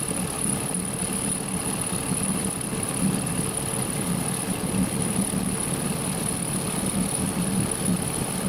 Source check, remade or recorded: recorded